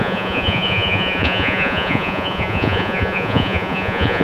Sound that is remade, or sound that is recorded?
remade